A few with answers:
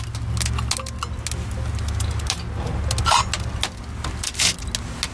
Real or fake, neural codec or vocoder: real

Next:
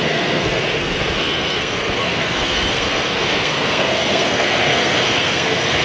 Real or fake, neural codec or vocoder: fake, codec, SNAC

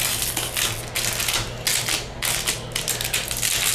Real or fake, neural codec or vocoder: real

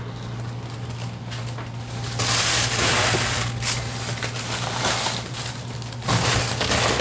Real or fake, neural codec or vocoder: real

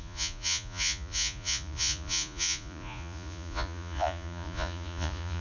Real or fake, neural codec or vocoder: fake, vocoder, Vocos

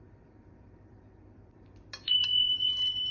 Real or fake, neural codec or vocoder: fake, vocoder, BigVGAN v2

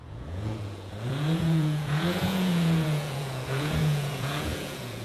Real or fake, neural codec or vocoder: fake, vocoder, Vocos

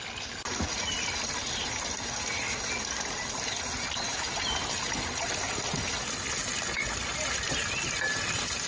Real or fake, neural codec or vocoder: real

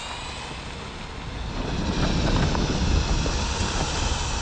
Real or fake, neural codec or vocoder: real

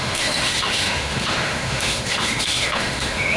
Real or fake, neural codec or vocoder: fake, autoencoder, DAC-VAE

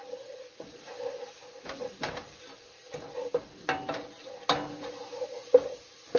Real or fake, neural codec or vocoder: real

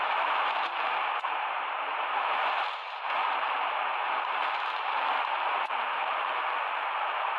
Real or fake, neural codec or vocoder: fake, vocoder, BigVGAN v2